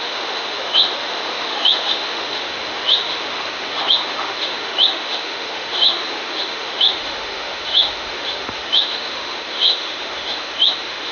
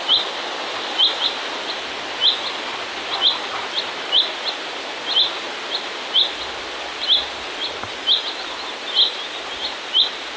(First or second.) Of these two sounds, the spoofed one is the first